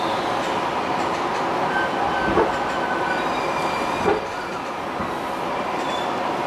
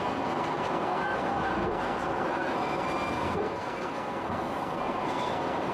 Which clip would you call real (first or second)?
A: first